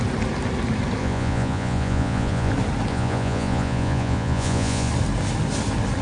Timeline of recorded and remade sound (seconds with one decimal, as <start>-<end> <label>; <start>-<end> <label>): 0.0-1.0 recorded; 1.0-2.5 remade; 2.5-2.9 recorded; 2.9-4.9 remade; 4.9-6.0 recorded